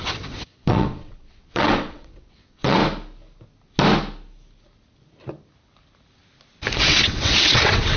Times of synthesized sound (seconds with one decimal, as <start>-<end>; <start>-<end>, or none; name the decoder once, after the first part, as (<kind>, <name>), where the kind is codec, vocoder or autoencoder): 0.0-2.8 (vocoder, WaveNeXt); 6.8-8.0